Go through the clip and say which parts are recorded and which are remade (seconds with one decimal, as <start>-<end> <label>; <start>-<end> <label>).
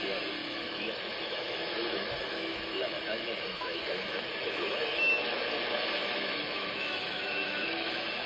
0.0-0.4 recorded; 0.4-5.4 remade; 5.4-6.0 recorded; 6.0-7.9 remade; 7.9-8.3 recorded